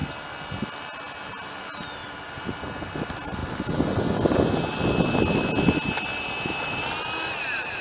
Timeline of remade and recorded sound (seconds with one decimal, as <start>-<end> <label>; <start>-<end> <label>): 0.0-1.3 recorded; 1.3-3.4 remade; 3.4-4.7 recorded; 4.7-7.8 remade